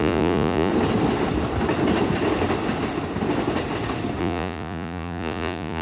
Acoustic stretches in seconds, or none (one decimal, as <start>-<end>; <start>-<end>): 0.7-4.2